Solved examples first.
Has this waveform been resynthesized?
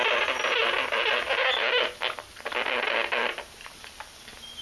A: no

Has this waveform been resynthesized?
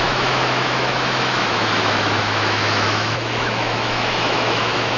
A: yes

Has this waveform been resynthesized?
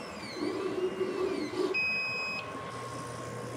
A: no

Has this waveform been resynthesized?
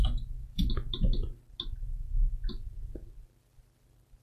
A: no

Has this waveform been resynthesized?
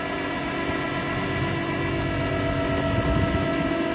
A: no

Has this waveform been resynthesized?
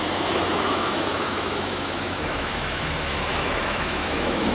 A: yes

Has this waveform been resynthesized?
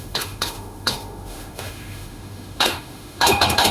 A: yes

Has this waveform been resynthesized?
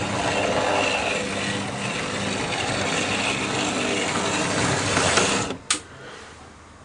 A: no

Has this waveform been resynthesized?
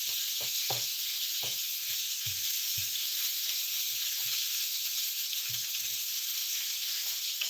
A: yes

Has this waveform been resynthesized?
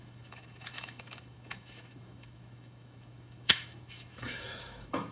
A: yes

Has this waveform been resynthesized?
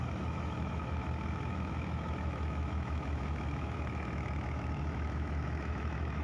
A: yes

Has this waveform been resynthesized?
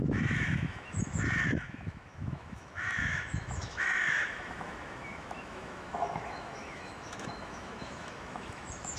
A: yes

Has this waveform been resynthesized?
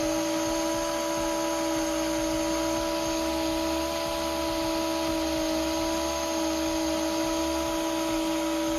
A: no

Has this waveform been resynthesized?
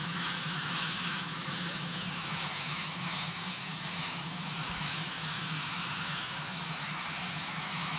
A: yes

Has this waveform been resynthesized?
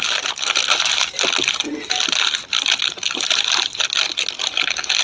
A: no